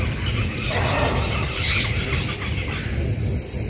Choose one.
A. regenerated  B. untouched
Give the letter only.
A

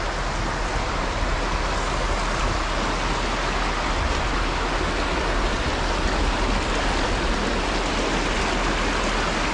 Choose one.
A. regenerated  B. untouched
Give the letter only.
B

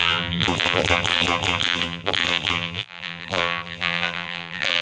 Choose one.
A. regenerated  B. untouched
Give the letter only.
A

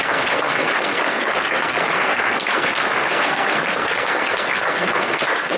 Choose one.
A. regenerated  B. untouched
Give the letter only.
A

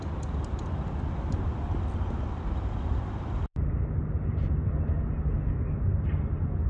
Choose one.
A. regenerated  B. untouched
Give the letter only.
B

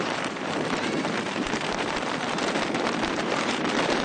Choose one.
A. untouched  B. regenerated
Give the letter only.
B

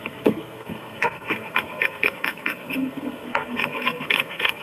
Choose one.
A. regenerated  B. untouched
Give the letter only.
A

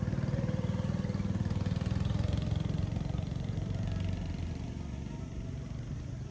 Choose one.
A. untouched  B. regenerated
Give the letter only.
A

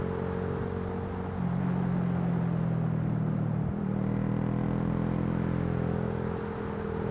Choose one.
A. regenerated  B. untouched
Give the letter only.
B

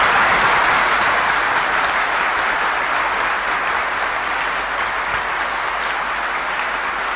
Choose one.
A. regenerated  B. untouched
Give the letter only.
B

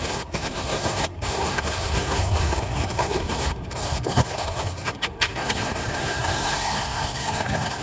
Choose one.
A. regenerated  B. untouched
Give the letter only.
A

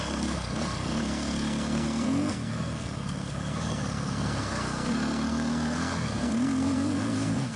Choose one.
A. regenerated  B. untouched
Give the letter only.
A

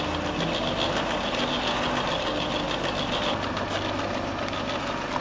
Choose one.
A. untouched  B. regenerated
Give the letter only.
A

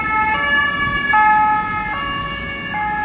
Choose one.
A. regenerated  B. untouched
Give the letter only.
B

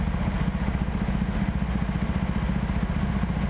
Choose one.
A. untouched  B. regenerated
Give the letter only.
A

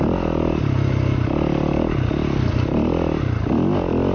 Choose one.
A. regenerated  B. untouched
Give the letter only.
B